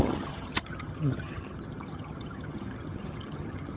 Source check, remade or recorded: remade